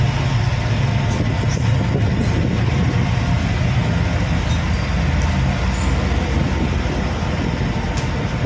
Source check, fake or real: real